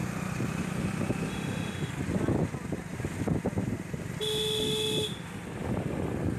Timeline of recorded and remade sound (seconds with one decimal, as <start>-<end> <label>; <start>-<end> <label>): 0.0-1.3 recorded; 1.3-1.9 remade; 1.9-6.4 recorded